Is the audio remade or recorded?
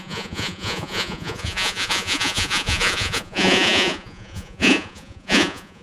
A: remade